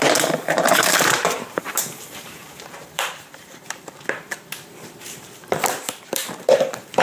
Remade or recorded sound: remade